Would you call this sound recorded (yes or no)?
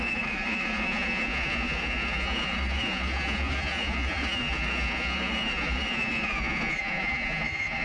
no